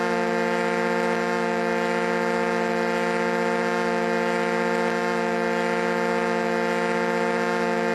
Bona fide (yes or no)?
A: yes